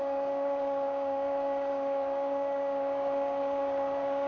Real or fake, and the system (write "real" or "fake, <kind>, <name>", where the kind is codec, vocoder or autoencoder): fake, codec, DAC